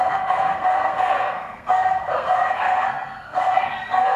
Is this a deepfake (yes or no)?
yes